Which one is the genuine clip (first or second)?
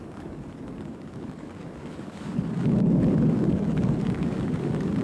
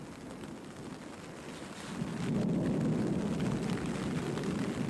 second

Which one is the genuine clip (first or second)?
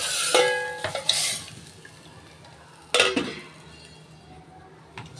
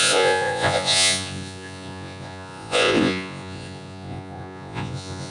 first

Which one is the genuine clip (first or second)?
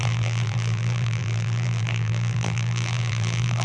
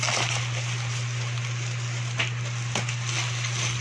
second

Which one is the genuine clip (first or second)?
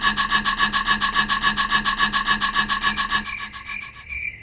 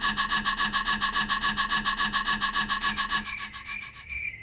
first